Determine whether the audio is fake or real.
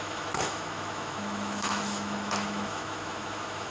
fake